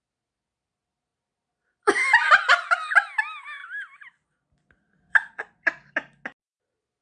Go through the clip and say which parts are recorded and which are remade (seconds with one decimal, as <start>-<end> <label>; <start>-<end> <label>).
0.0-7.0 recorded